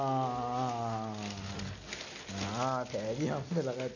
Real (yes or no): yes